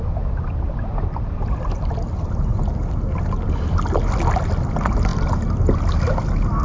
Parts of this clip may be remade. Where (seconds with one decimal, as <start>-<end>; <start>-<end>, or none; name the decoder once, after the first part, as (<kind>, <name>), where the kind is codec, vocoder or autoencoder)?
none